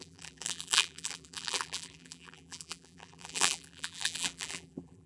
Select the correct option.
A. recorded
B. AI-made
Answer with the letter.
B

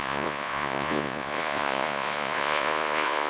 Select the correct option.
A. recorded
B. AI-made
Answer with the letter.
B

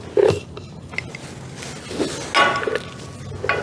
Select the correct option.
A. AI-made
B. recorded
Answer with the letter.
B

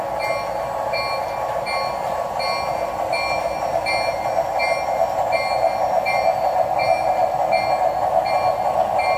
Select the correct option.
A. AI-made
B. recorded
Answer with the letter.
B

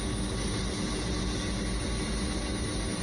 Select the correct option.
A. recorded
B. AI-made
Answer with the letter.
A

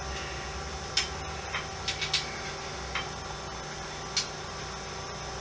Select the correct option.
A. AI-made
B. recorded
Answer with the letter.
B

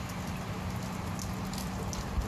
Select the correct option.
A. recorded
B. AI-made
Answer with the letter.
A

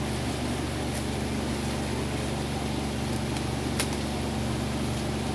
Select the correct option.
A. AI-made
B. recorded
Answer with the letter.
B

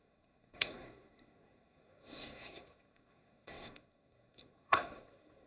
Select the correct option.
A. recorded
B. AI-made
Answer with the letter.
B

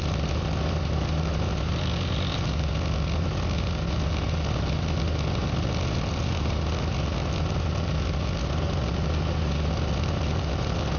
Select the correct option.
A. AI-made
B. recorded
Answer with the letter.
B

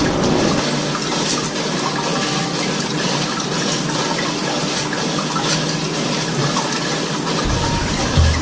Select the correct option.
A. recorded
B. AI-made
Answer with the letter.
A